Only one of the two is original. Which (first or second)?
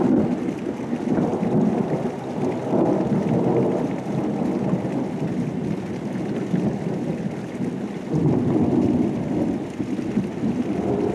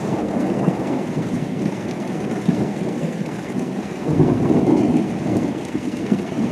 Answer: first